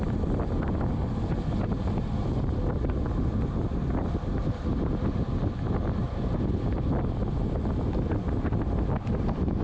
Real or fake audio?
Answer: real